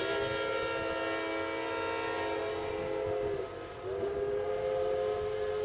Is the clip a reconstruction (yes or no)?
no